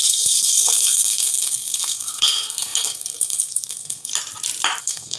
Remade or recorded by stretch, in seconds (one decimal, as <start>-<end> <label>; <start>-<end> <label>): 0.0-4.1 remade; 4.1-4.8 recorded; 4.8-5.2 remade